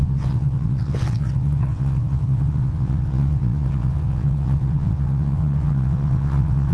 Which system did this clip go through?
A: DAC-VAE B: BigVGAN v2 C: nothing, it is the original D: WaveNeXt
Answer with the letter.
D